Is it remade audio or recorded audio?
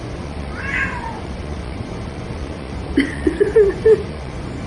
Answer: remade